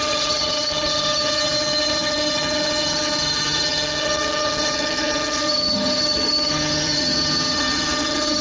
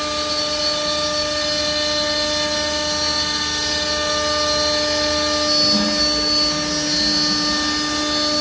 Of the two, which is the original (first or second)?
second